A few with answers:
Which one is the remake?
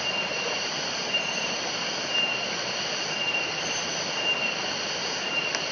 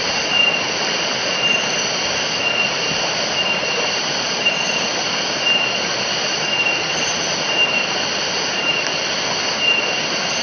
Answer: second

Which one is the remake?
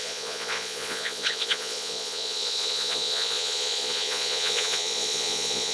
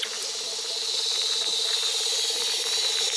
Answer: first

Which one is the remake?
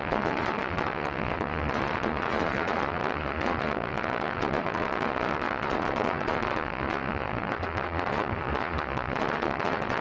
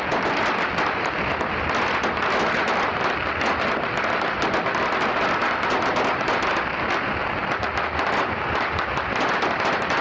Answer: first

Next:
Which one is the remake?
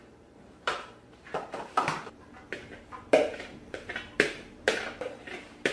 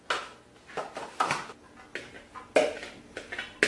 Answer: first